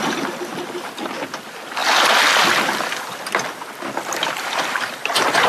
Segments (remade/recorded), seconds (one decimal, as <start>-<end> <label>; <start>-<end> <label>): 0.0-5.5 recorded